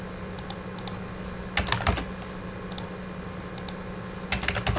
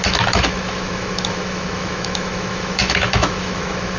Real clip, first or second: first